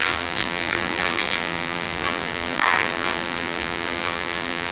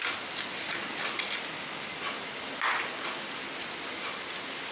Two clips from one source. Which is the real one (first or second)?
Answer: second